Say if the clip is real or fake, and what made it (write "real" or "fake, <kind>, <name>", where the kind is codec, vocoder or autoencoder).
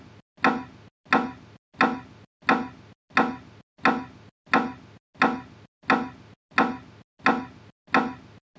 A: real